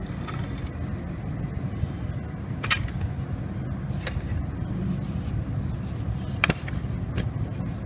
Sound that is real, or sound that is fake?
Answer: real